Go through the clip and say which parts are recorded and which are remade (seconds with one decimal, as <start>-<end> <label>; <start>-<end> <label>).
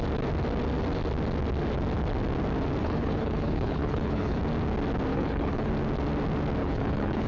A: 0.0-2.8 recorded; 2.8-4.4 remade; 4.4-5.1 recorded; 5.1-5.7 remade; 5.7-6.6 recorded; 6.6-7.3 remade